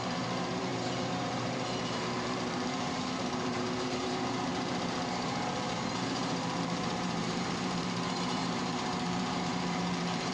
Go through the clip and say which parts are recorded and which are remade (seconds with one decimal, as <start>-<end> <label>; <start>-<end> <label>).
0.0-10.3 remade